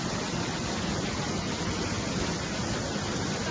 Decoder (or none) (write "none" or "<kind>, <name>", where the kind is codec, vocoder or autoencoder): none